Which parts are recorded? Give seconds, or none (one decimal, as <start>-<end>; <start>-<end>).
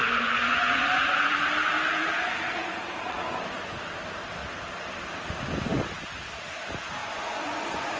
1.4-2.0; 3.8-7.0